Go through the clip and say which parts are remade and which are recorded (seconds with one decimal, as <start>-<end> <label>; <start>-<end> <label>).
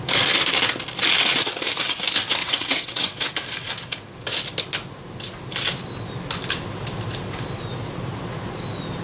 0.0-2.4 recorded; 2.4-3.3 remade; 3.3-9.0 recorded